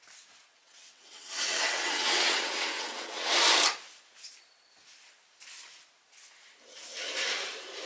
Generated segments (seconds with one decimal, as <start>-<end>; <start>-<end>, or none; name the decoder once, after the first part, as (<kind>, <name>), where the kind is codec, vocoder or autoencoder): 0.5-3.3 (vocoder, WaveNeXt)